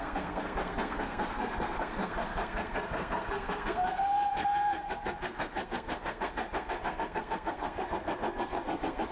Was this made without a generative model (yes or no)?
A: no